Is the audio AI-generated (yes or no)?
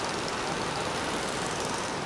no